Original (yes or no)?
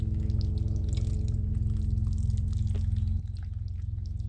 yes